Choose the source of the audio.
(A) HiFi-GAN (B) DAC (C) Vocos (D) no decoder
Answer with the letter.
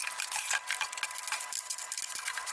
D